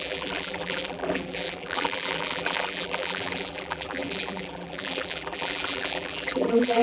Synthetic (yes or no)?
yes